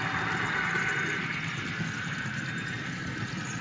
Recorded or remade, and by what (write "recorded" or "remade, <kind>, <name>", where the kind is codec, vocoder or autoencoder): recorded